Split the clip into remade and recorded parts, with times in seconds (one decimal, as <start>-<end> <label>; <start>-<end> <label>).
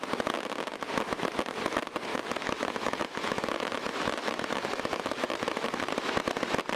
0.0-2.1 recorded; 2.1-5.9 remade; 5.9-6.8 recorded